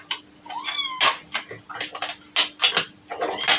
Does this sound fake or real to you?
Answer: real